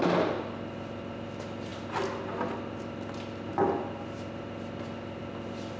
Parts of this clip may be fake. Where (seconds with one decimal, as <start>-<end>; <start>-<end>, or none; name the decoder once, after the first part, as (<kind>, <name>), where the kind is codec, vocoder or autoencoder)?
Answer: none